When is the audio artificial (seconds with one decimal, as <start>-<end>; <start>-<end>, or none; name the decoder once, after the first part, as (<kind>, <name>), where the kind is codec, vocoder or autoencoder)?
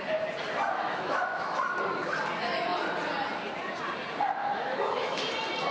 0.7-1.6 (autoencoder, DAC-VAE); 4.4-5.3